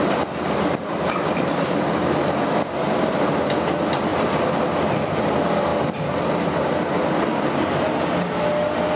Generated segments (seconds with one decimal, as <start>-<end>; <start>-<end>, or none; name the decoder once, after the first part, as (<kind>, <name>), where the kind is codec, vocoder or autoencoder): none